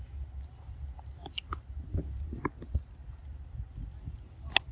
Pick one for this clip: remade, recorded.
recorded